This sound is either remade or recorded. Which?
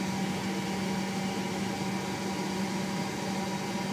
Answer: recorded